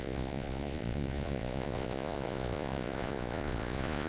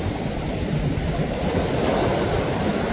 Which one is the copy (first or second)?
first